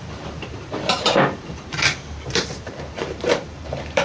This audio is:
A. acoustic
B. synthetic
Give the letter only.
B